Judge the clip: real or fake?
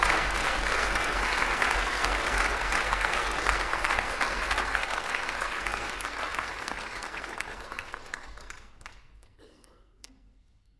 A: fake